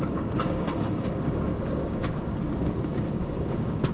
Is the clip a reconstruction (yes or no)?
yes